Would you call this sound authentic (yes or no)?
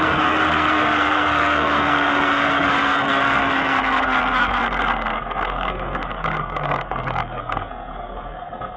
no